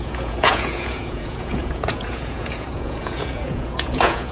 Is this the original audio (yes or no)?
no